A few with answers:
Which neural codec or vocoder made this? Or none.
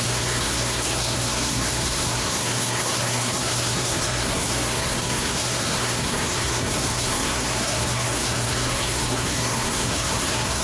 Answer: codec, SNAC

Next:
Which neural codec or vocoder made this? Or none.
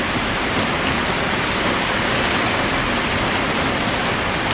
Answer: none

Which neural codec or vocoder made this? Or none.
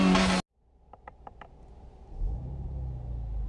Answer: none